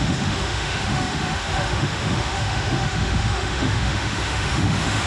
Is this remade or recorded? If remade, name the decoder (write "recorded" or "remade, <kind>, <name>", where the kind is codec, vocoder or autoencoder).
remade, autoencoder, DAC-VAE